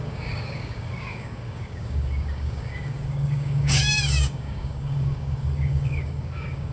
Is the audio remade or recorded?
remade